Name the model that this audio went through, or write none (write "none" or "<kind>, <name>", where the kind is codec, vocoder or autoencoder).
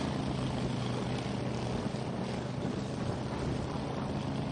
none